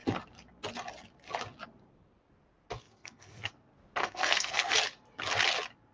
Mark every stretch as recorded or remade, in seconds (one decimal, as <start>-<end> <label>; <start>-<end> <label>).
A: 0.0-2.8 recorded; 2.8-3.5 remade; 3.5-4.0 recorded; 4.0-4.7 remade; 4.7-5.9 recorded